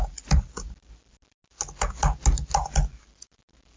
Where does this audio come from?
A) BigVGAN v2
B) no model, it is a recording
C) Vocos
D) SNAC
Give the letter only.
B